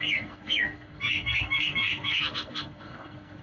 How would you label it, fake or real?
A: fake